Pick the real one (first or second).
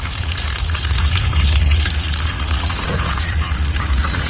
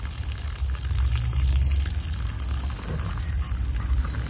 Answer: second